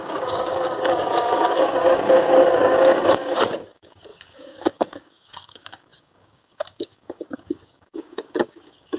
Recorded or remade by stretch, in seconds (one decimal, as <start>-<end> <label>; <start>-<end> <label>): 0.0-9.0 remade